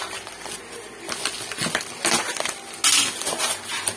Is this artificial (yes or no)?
no